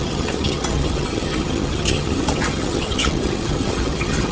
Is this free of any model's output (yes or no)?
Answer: no